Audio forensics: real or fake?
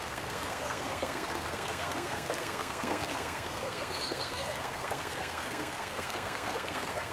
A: fake